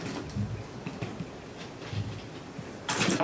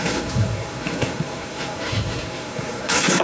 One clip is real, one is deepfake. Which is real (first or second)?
first